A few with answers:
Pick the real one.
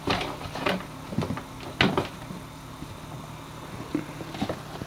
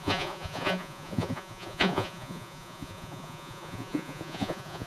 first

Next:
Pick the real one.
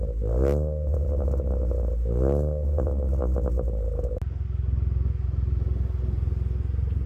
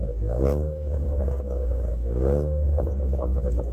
first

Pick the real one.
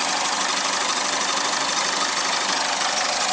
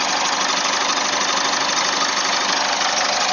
second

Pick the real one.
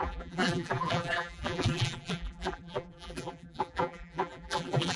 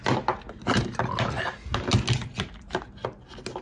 second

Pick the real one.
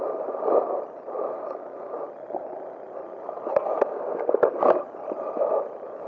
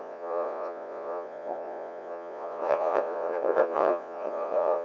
first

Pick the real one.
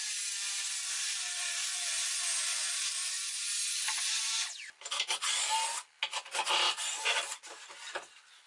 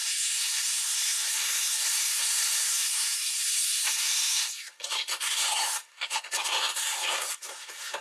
first